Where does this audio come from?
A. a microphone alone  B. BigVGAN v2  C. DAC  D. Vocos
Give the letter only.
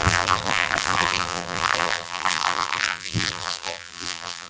B